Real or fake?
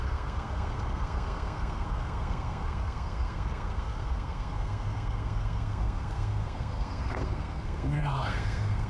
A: fake